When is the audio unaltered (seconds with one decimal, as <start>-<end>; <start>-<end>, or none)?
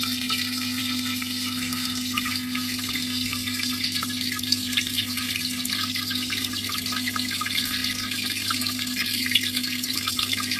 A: none